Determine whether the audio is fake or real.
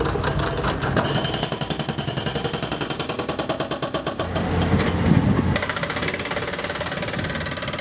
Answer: real